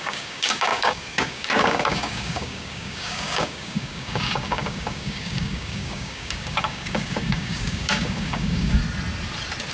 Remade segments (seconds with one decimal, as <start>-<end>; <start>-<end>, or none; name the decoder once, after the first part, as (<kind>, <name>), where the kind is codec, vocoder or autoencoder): 0.0-8.8 (codec, DAC)